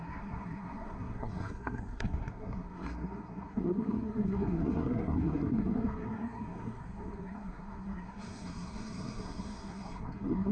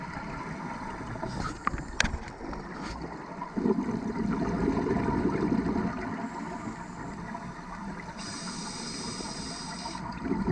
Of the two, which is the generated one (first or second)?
first